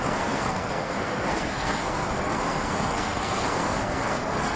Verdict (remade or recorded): remade